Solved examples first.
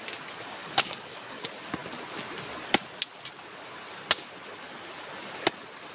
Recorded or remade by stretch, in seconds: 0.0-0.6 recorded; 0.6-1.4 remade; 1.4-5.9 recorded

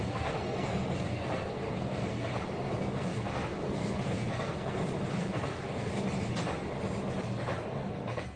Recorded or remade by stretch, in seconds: 0.0-2.3 remade; 2.3-2.9 recorded; 2.9-5.9 remade; 5.9-7.9 recorded; 7.9-8.4 remade

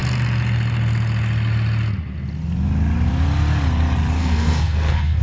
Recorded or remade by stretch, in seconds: 0.0-4.2 recorded; 4.2-5.2 remade